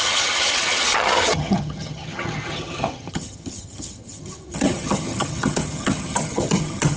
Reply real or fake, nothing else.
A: fake